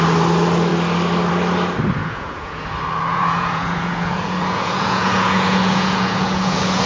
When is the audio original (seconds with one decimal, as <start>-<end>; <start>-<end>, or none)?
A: 0.0-2.0; 2.7-3.1